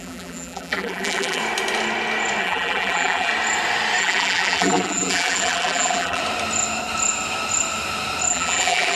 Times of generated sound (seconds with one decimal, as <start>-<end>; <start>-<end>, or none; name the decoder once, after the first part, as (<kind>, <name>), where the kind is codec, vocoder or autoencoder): 0.0-1.4 (vocoder, BigVGAN v2); 2.4-3.3; 4.0-6.2; 8.3-9.0